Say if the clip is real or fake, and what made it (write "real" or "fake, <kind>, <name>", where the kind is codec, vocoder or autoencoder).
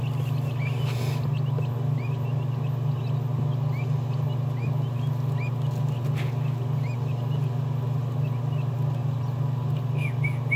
real